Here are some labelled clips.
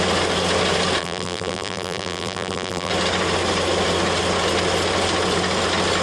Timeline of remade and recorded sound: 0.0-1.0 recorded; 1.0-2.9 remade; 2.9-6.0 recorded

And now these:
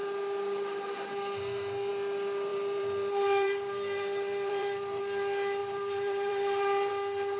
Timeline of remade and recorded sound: 0.0-2.5 recorded; 2.5-5.0 remade; 5.0-5.6 recorded; 5.6-6.9 remade; 6.9-7.4 recorded

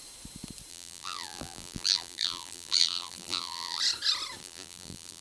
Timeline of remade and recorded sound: 0.0-0.7 recorded; 0.7-3.8 remade; 3.8-4.4 recorded; 4.4-5.2 remade

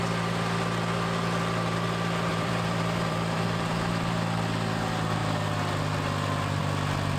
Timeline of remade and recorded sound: 0.0-2.3 recorded; 2.3-3.9 remade; 3.9-7.2 recorded

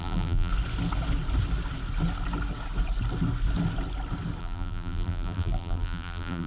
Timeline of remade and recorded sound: 0.0-0.5 remade; 0.5-4.4 recorded; 4.4-6.5 remade

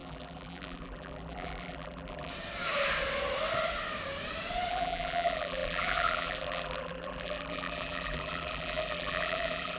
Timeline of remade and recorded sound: 0.0-2.3 remade; 2.3-4.7 recorded; 4.7-9.8 remade

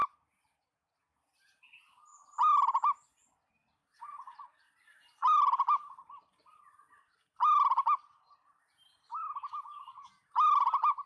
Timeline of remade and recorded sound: 0.0-11.1 recorded

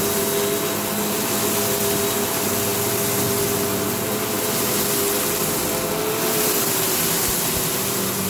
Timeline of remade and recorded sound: 0.0-8.3 recorded